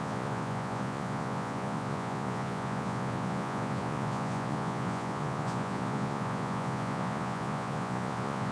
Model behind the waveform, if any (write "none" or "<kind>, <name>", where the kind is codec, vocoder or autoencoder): vocoder, Vocos